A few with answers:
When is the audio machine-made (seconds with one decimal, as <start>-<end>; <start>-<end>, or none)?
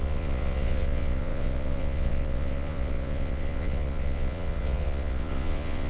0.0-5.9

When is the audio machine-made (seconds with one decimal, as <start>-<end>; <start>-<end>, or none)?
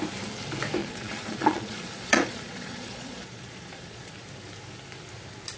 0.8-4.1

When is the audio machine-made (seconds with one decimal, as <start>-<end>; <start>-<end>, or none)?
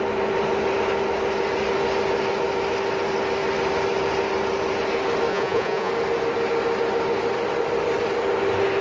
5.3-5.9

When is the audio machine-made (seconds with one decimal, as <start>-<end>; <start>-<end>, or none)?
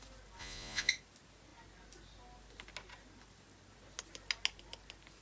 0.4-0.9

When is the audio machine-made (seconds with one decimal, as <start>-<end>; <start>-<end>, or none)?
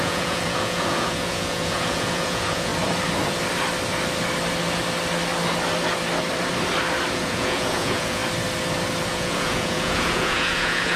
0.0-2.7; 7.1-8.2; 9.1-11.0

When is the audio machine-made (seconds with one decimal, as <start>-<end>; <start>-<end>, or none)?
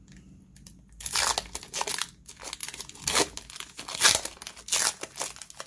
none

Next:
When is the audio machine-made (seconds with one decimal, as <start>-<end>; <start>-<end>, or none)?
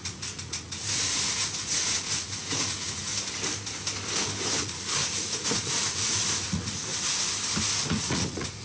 0.0-3.1; 4.6-6.9; 7.8-8.6